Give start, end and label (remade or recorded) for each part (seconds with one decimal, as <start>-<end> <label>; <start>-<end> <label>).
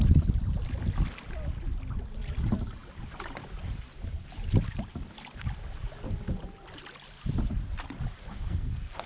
0.0-8.3 recorded; 8.3-9.1 remade